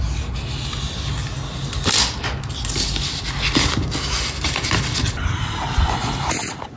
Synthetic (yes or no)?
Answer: no